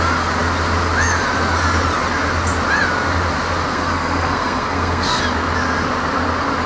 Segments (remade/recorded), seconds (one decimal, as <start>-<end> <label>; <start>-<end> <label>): 0.0-3.7 recorded; 3.7-5.2 remade; 5.2-6.7 recorded